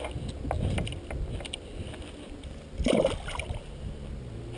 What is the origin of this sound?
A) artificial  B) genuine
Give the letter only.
B